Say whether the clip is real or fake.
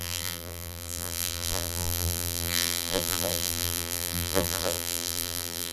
fake